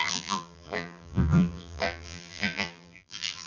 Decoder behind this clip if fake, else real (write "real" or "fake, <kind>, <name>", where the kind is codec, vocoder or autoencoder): fake, vocoder, BigVGAN v2